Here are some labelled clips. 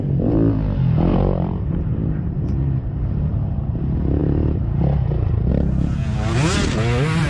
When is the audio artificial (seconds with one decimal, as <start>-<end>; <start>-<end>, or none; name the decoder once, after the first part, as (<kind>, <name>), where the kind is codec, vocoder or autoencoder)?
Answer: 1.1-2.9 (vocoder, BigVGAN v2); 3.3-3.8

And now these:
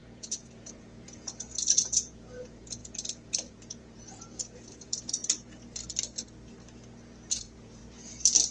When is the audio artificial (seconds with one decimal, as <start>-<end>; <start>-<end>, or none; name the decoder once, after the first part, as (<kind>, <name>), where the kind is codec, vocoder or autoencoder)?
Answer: 0.0-5.2 (vocoder, Vocos); 7.3-7.8

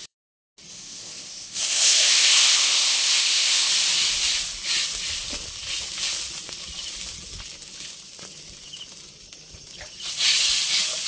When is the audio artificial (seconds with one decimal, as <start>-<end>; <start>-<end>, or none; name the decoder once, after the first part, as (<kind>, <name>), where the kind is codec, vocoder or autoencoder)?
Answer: 0.7-3.7 (codec, ZipCodec)